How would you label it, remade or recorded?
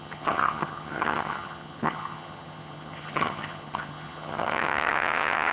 remade